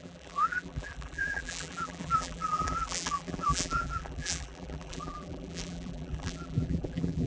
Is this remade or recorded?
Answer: remade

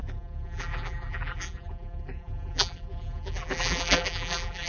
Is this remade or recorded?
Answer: remade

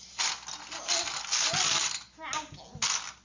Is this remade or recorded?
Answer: recorded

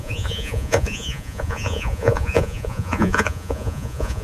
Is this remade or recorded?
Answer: remade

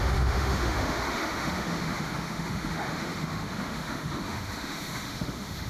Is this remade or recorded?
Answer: remade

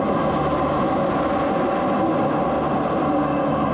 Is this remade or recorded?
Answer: recorded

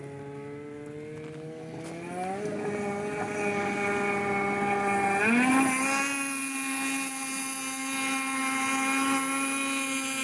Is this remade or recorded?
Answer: recorded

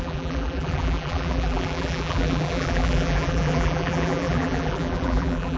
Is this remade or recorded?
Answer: remade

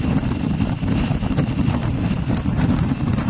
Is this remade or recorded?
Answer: recorded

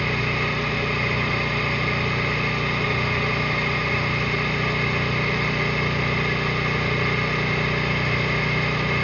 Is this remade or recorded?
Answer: recorded